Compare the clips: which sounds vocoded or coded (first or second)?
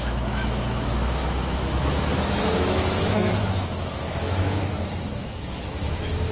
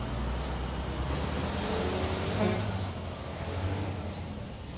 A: first